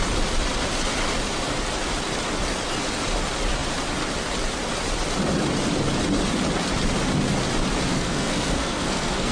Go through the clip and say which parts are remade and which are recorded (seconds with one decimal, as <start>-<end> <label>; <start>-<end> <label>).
0.0-7.9 recorded; 7.9-9.3 remade